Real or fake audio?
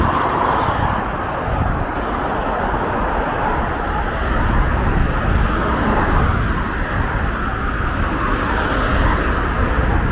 real